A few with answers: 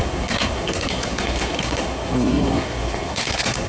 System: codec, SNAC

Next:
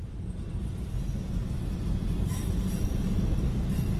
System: none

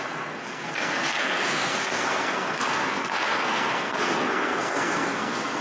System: codec, SNAC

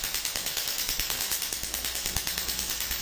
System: codec, SNAC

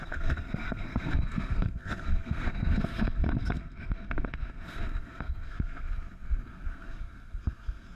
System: codec, SNAC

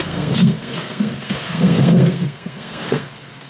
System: codec, SNAC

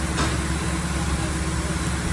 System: none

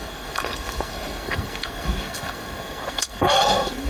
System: codec, SNAC